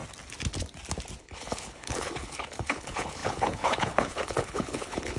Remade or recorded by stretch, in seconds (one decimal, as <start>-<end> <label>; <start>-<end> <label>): 0.0-1.2 recorded; 1.2-5.2 remade